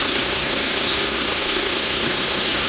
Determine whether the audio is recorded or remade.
remade